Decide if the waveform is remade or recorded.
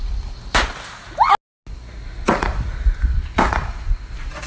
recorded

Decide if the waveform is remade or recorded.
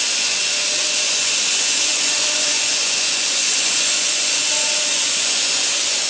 remade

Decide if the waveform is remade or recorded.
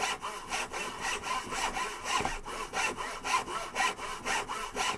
recorded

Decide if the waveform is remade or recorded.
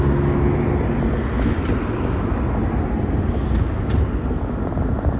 recorded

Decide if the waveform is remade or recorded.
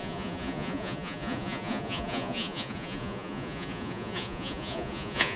remade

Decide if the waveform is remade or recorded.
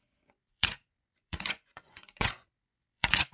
remade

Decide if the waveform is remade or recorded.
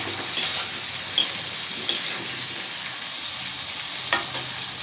recorded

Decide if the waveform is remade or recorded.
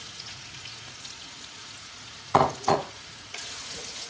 remade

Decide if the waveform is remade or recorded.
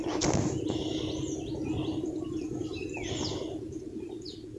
recorded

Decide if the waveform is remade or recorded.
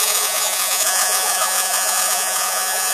remade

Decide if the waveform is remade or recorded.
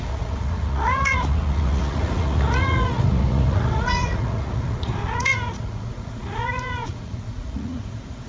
remade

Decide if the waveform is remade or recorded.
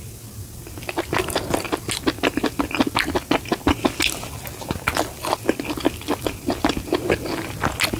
recorded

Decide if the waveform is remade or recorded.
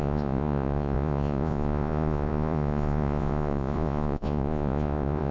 remade